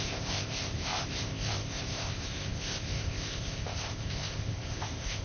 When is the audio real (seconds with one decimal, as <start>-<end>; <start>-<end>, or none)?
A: none